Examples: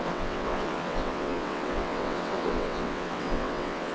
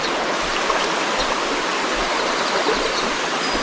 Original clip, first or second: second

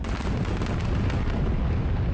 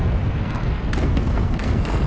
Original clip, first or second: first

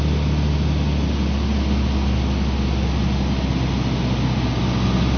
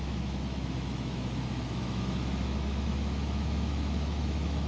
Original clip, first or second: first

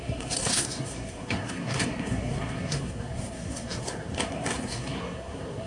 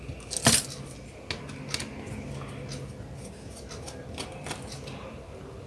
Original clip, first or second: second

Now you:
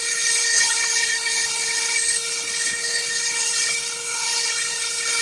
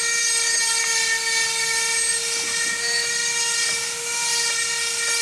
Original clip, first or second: second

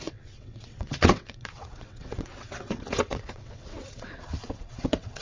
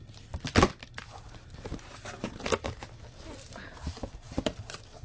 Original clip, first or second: second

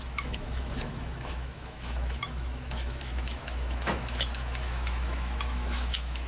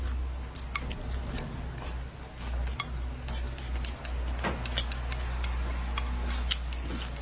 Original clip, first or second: second